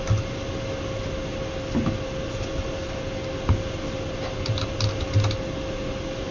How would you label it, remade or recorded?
recorded